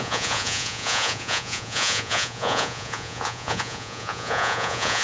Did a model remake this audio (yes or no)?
yes